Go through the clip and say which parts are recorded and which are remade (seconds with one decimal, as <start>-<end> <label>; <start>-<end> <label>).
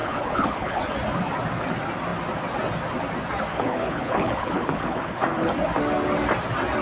0.0-0.8 remade; 0.8-3.5 recorded; 3.5-5.5 remade; 5.5-6.8 recorded